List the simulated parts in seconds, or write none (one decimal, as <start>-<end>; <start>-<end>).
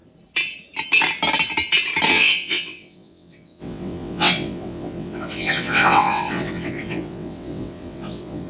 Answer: 2.1-8.5